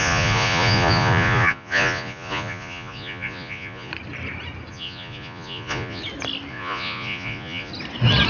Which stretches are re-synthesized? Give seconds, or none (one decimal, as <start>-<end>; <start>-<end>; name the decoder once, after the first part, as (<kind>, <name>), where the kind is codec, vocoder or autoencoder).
0.0-3.9 (vocoder, Vocos); 4.7-6.0; 6.5-7.7